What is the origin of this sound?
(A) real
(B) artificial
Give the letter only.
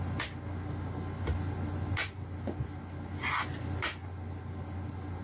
A